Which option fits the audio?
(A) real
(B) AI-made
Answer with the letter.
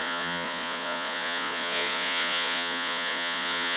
B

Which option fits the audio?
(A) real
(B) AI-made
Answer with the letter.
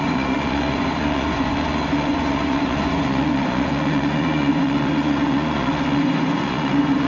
B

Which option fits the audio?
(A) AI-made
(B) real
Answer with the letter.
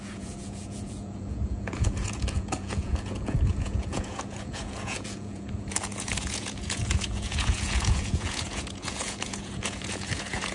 A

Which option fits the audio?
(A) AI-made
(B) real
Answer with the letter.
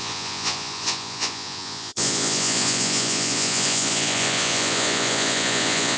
A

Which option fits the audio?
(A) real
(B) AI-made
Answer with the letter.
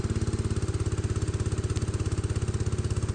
A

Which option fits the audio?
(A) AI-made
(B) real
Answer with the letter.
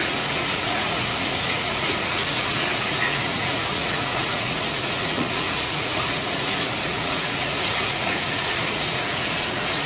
A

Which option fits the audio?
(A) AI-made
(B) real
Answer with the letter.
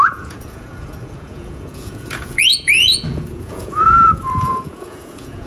A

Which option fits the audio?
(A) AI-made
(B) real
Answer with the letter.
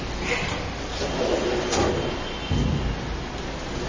B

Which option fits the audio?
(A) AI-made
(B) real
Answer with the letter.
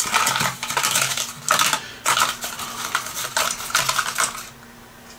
B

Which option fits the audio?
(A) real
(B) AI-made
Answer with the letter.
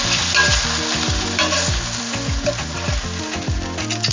A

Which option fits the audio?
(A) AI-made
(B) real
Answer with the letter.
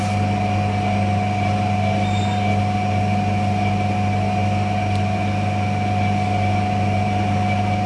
B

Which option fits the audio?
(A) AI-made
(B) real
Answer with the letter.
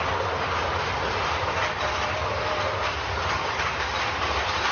B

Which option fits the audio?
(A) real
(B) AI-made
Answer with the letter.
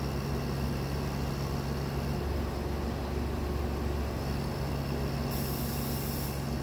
A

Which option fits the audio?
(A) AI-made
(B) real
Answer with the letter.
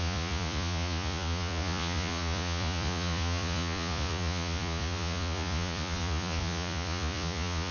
A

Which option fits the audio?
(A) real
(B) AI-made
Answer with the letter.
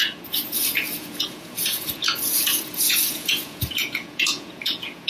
B